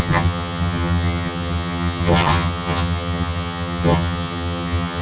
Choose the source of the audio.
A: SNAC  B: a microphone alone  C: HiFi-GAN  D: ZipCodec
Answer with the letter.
C